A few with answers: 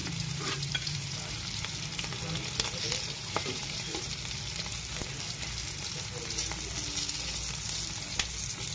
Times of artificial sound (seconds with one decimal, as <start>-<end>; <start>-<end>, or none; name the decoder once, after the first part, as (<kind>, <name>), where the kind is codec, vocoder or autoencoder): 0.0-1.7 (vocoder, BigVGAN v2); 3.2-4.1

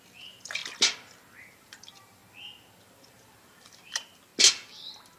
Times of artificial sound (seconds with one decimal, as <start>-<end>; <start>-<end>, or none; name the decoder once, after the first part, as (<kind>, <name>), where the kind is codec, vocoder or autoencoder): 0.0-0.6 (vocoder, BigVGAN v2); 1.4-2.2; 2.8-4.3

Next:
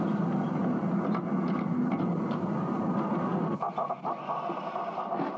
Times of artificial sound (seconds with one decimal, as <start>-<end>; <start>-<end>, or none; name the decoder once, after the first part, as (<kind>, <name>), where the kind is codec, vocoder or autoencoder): none

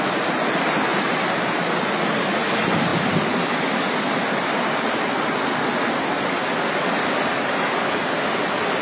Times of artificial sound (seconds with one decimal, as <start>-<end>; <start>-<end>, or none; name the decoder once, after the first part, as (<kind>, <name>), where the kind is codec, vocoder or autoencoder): 0.9-1.9 (vocoder, BigVGAN v2)